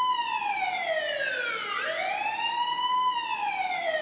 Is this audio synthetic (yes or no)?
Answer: no